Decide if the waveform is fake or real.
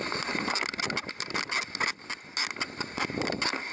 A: real